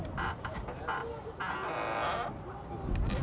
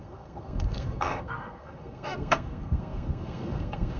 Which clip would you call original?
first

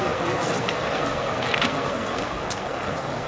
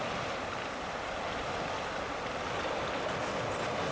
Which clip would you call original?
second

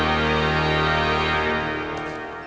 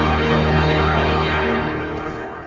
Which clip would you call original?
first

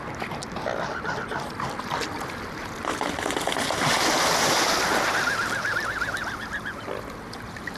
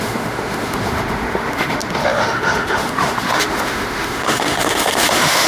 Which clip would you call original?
first